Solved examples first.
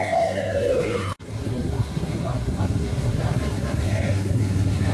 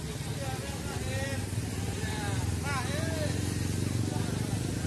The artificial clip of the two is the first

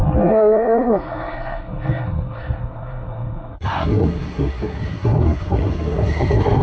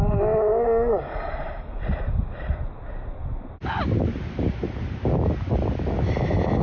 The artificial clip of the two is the first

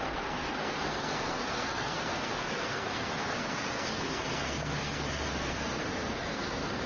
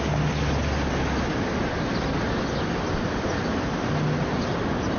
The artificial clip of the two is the first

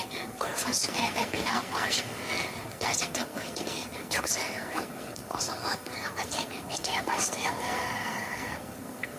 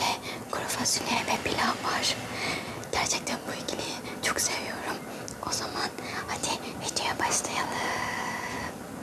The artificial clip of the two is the first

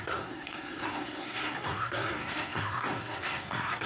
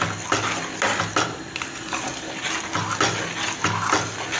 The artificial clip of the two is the first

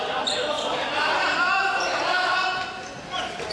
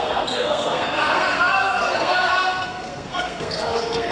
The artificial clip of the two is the second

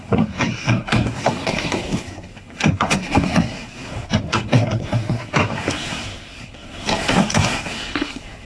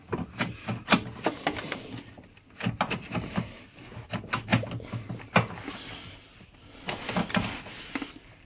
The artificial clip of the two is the first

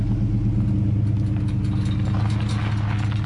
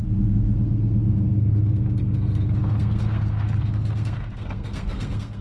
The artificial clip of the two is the second